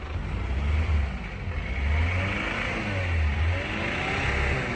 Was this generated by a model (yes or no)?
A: no